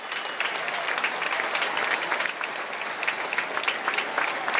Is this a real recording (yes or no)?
yes